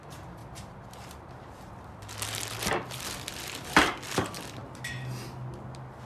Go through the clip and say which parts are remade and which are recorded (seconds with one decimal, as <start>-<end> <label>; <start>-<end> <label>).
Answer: 0.0-6.1 recorded